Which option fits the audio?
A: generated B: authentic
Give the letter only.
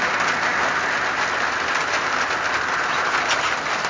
B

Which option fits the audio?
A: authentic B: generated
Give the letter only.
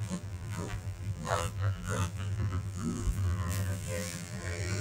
B